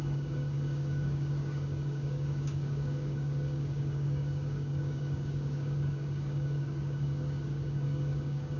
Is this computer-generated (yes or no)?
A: yes